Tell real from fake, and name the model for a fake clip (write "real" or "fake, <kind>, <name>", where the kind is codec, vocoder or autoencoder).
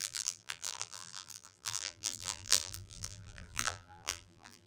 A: fake, vocoder, BigVGAN v2